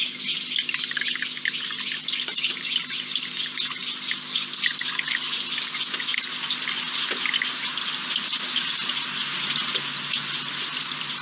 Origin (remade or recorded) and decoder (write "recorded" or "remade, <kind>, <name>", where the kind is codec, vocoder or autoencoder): recorded